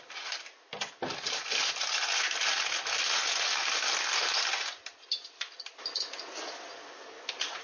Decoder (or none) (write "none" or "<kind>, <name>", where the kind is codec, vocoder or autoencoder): none